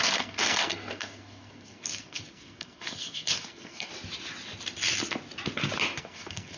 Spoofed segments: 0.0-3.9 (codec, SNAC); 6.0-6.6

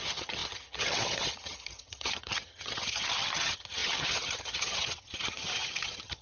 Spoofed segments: 0.0-6.2 (vocoder, HiFi-GAN)

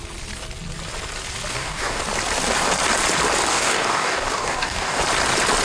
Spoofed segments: 1.5-2.0 (codec, DAC); 3.5-5.0

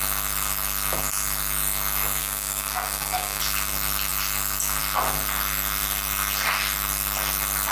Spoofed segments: 2.2-3.4 (codec, DAC)

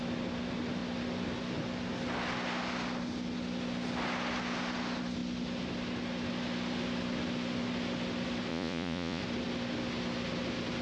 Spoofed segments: 8.5-9.2 (vocoder, Vocos)

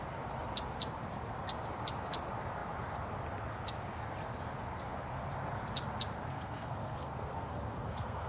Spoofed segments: 6.3-8.3 (codec, SNAC)

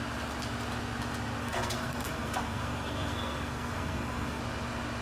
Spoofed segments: 1.4-4.4 (codec, SNAC)